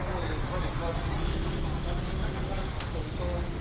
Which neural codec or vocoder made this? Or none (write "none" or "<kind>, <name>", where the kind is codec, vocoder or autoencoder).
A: none